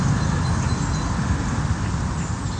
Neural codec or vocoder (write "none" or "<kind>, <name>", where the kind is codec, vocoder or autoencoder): none